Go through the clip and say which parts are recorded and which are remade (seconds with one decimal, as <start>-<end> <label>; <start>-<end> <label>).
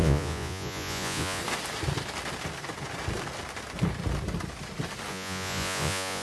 0.0-1.4 remade; 1.4-5.1 recorded; 5.1-6.2 remade